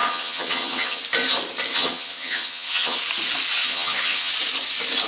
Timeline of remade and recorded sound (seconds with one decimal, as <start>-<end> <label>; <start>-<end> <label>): 0.0-1.0 remade; 1.0-1.7 recorded; 1.7-3.0 remade; 3.0-3.6 recorded; 3.6-4.3 remade; 4.3-5.1 recorded